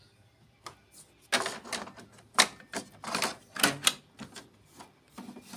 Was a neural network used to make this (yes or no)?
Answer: no